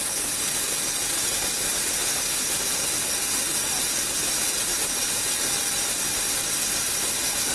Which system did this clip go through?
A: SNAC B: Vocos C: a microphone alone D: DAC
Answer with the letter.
C